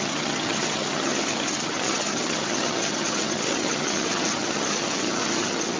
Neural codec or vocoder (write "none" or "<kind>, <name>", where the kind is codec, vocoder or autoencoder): vocoder, HiFi-GAN